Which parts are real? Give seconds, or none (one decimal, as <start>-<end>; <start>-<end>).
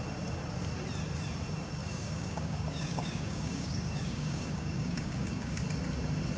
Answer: 0.0-1.8; 5.6-6.4